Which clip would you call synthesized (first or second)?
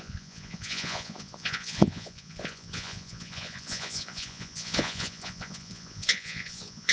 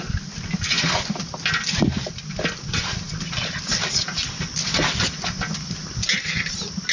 first